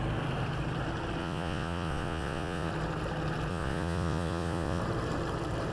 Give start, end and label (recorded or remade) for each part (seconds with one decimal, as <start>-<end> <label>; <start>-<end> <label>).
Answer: 0.0-1.2 recorded; 1.2-2.7 remade; 2.7-3.5 recorded; 3.5-4.8 remade; 4.8-5.7 recorded